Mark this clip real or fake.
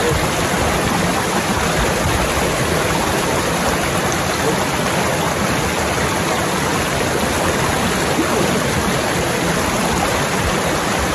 real